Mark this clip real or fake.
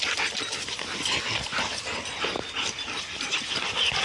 real